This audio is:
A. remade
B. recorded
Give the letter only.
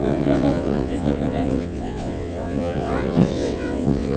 A